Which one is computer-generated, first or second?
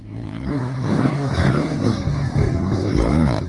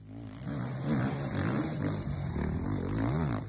first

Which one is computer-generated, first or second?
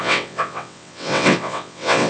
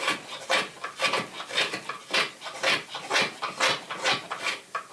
first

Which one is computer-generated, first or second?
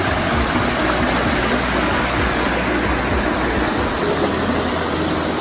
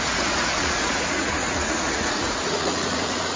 second